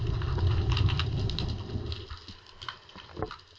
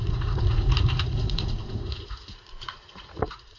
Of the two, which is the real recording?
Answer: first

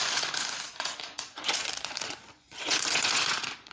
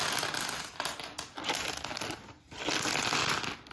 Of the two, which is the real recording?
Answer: second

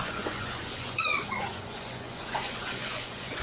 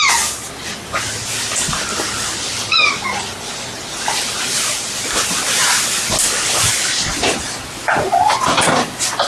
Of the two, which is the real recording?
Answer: second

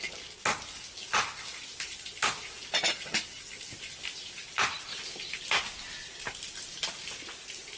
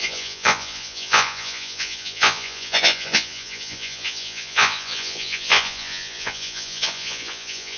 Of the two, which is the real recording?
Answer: first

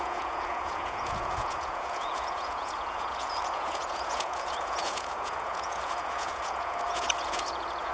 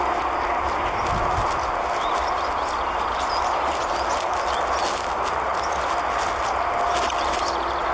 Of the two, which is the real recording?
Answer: second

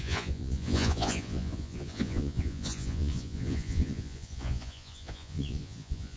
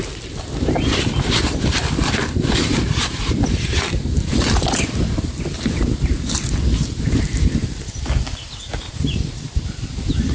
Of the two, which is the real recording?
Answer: second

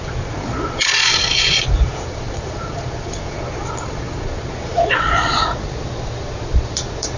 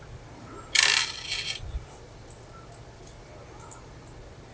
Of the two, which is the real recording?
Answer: second